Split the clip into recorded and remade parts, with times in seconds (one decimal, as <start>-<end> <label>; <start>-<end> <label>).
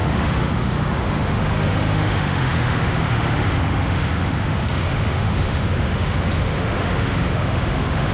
0.0-8.1 remade